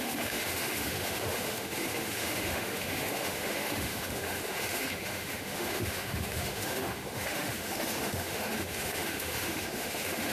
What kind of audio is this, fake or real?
fake